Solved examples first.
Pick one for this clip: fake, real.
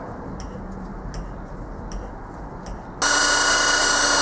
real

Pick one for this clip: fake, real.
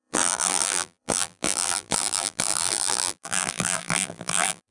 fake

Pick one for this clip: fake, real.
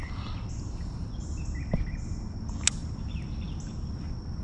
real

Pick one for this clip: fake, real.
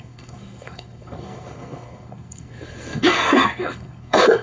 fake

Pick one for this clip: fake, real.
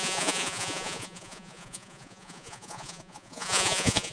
fake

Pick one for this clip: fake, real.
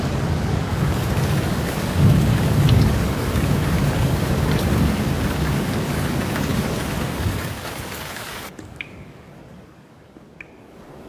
fake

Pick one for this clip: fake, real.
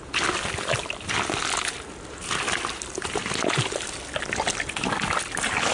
real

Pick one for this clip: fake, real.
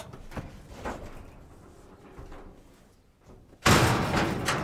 fake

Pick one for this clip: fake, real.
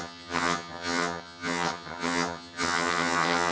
fake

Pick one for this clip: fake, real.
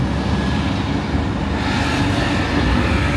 real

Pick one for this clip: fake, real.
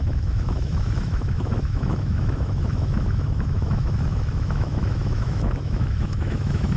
fake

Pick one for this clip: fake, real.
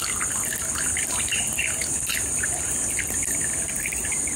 real